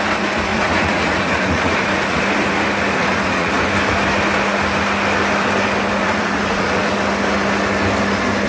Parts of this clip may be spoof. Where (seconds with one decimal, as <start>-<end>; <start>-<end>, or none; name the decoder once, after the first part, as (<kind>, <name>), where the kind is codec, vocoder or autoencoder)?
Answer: 0.5-2.2 (vocoder, Vocos); 3.0-3.6; 6.0-6.9